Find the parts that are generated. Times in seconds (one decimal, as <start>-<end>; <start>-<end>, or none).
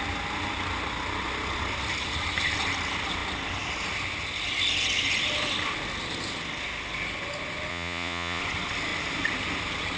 7.7-8.4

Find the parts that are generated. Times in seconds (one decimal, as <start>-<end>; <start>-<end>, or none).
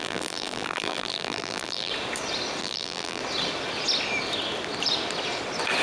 0.0-1.9; 2.6-3.2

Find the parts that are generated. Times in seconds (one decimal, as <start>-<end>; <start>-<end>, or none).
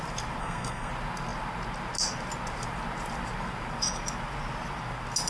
0.4-0.9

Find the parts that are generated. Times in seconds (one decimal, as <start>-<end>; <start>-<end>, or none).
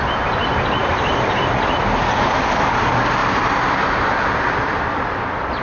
0.8-1.8; 3.2-5.0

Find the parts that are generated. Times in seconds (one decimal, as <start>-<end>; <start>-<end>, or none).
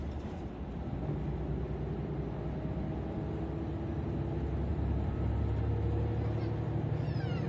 4.7-5.3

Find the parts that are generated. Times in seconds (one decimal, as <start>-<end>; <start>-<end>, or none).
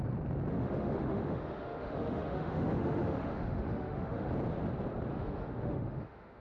0.5-4.3; 5.1-6.4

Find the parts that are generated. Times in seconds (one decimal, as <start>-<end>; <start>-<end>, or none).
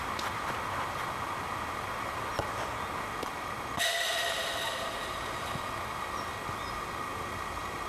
7.1-7.9